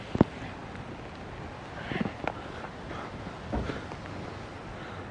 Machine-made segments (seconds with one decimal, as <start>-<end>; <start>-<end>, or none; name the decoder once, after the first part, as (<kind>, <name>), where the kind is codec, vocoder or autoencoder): none